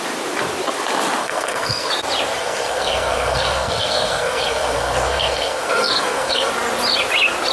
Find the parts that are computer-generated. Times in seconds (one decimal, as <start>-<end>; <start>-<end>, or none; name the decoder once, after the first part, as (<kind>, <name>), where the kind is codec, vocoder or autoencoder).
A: 1.2-1.9 (codec, SNAC); 2.4-6.5